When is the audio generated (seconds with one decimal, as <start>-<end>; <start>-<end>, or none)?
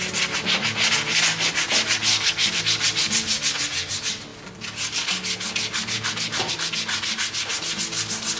2.1-2.6